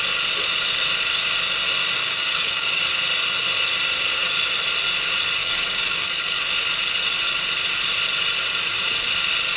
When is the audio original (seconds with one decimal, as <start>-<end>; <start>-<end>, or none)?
0.0-2.0; 2.8-5.4; 6.4-9.6